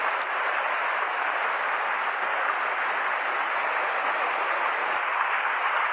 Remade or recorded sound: recorded